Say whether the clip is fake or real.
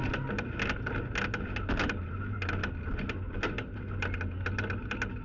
real